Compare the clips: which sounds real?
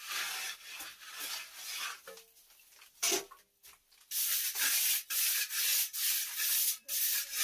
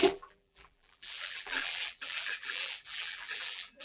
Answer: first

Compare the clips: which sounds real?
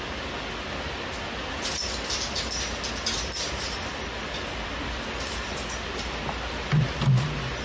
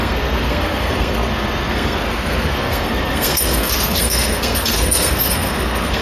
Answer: first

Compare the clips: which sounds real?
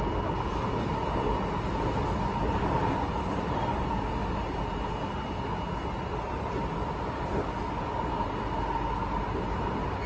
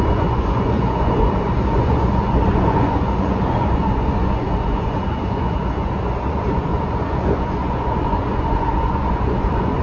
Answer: first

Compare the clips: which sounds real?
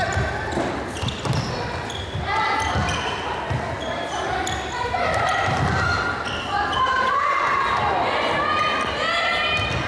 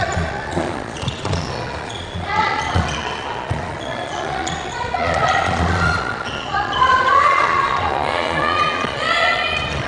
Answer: first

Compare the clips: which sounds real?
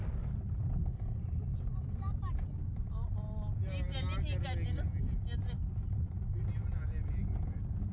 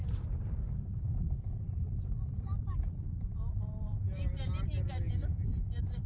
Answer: first